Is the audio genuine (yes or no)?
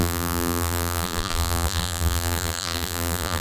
no